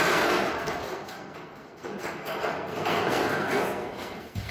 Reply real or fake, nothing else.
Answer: fake